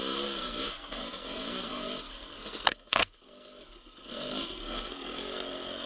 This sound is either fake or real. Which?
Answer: fake